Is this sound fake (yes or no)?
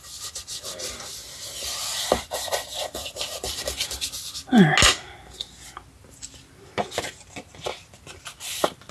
no